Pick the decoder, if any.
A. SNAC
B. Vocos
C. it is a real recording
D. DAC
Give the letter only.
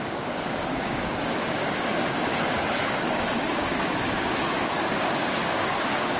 D